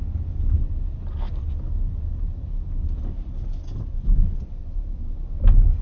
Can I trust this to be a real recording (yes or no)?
yes